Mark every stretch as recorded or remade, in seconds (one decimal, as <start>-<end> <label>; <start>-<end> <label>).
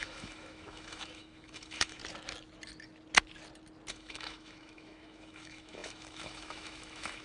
0.0-2.0 remade; 2.0-3.9 recorded; 3.9-7.2 remade